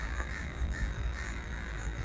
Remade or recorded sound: remade